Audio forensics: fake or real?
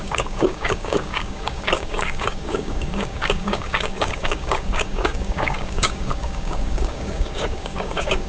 fake